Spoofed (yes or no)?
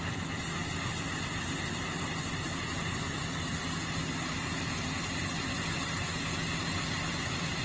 no